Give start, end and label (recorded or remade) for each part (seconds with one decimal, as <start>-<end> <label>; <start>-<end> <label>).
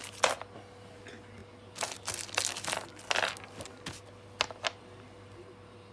0.0-5.9 recorded